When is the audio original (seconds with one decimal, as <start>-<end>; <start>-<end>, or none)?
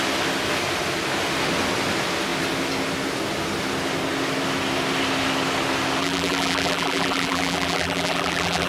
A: 0.0-6.0